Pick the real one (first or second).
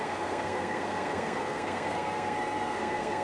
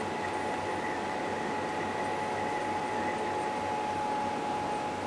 second